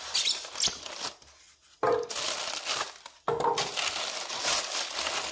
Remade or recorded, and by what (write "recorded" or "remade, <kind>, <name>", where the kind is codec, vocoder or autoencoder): recorded